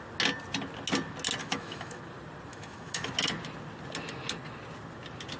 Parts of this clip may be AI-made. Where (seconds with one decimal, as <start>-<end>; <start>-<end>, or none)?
1.4-2.0; 2.5-3.1